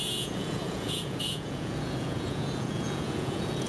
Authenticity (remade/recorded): remade